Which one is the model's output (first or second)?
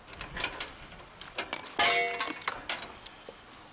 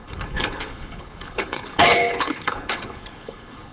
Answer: second